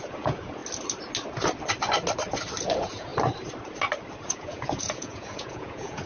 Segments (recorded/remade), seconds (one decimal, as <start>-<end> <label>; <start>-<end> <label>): 0.0-0.6 remade; 0.6-2.6 recorded; 2.6-3.1 remade; 3.1-4.2 recorded; 4.2-6.1 remade